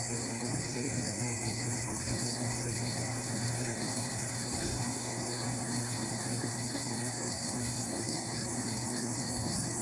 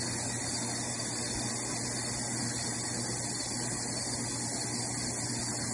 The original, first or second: second